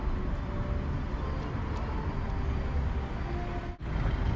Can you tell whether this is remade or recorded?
recorded